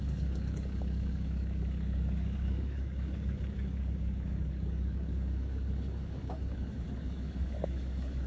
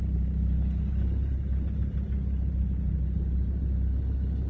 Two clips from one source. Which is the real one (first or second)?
second